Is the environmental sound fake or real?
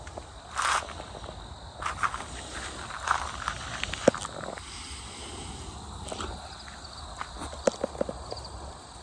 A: real